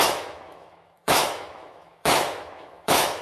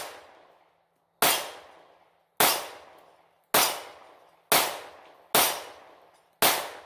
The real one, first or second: second